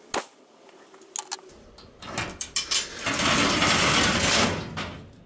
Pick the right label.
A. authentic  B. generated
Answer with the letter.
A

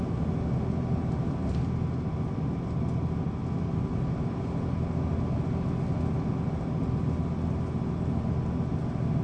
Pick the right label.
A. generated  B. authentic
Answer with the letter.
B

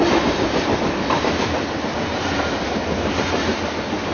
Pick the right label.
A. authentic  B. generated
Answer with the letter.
A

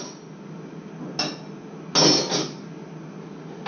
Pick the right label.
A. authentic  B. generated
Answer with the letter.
A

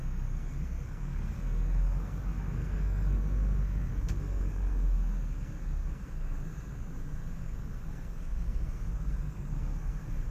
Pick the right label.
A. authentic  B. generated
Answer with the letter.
B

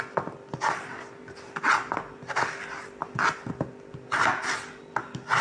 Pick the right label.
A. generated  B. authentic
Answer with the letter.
B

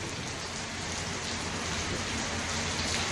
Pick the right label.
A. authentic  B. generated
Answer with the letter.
A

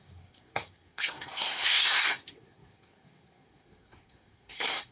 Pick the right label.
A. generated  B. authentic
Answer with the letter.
A